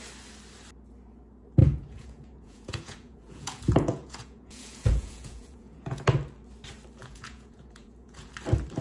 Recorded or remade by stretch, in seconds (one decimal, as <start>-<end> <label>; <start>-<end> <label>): 0.0-1.6 recorded; 1.6-6.0 remade; 6.0-7.0 recorded; 7.0-8.3 remade; 8.3-8.8 recorded